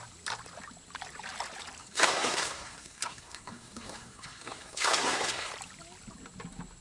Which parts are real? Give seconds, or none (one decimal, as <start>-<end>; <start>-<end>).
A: 0.0-1.8; 5.5-6.8